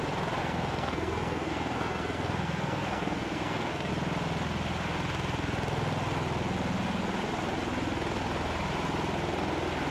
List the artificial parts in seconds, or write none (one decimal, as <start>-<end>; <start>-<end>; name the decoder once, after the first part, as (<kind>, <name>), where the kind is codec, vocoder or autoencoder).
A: 0.4-3.9 (codec, SNAC)